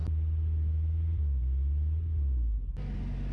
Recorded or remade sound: recorded